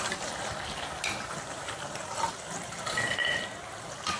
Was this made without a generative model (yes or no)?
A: yes